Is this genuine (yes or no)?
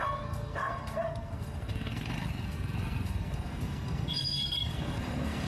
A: no